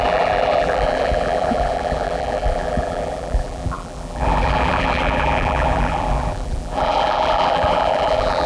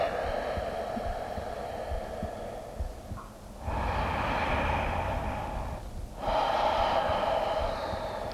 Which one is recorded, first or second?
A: second